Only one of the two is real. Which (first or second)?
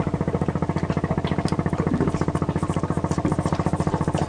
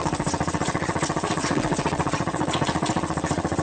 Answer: first